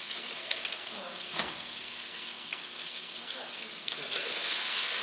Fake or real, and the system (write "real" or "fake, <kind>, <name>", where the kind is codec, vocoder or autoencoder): fake, codec, SNAC